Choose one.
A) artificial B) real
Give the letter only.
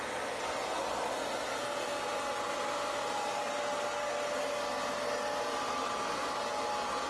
B